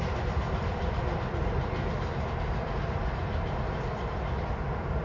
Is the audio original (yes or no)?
yes